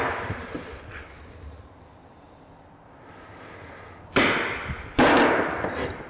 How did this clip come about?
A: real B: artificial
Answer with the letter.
A